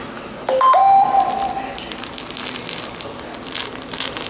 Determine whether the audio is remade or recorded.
recorded